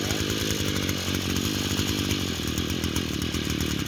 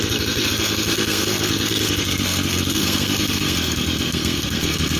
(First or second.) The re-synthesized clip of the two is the second